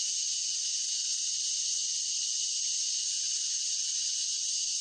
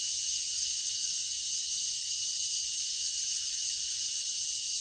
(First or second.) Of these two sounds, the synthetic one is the second